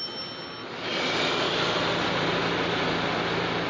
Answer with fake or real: real